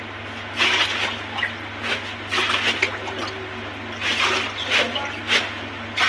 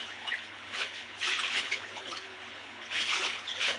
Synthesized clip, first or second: second